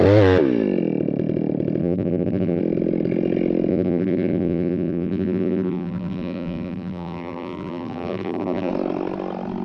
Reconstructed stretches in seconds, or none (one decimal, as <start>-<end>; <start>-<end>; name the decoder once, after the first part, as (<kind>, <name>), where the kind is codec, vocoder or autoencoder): 1.8-2.6 (vocoder, BigVGAN v2); 3.7-8.7